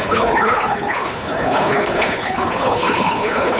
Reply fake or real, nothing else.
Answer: fake